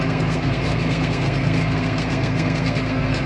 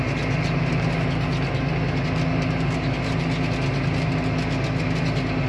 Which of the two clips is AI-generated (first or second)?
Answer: first